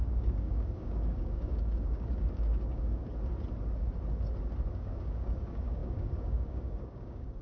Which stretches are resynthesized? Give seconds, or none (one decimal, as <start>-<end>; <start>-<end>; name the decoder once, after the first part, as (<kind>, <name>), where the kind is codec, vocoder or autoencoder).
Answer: 0.0-3.0 (codec, DAC); 4.8-7.4